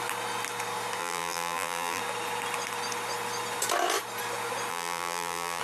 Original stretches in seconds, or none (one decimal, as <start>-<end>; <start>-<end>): 0.0-1.0; 2.0-4.7